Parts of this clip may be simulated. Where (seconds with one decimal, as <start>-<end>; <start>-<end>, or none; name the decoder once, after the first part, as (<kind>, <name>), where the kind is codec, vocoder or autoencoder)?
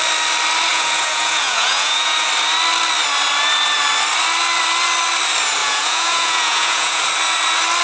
0.7-2.3 (vocoder, Vocos); 5.6-7.0